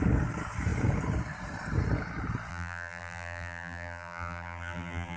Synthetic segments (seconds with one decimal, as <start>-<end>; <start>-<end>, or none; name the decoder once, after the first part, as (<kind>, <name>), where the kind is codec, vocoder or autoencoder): 2.5-5.2 (vocoder, BigVGAN v2)